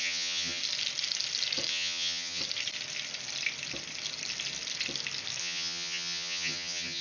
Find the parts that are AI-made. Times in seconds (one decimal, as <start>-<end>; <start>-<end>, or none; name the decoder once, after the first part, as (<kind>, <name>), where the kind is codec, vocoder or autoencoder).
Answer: 0.0-0.6 (vocoder, HiFi-GAN); 1.7-2.4; 5.4-7.0